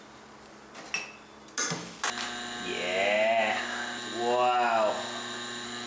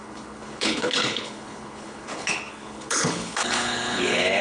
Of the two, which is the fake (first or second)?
second